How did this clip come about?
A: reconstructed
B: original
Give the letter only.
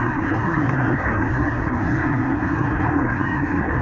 A